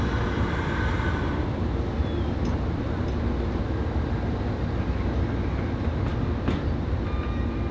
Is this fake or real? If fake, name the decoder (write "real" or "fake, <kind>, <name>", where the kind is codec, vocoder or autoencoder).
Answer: real